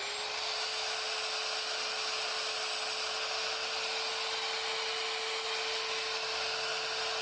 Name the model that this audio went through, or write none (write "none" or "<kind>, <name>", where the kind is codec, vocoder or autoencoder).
none